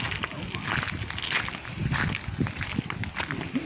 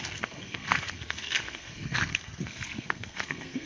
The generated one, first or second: second